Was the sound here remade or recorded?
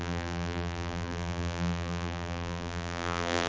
remade